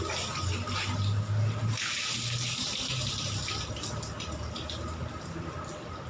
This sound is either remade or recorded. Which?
recorded